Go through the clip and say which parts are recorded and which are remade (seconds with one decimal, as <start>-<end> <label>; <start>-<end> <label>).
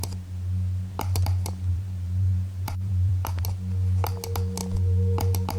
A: 0.0-1.7 recorded; 1.7-3.4 remade; 3.4-5.6 recorded